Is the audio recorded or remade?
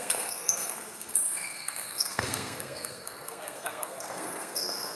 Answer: remade